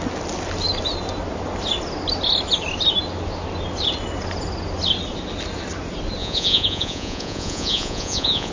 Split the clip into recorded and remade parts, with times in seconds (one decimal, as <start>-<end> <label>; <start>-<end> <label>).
0.0-6.2 recorded; 6.2-8.5 remade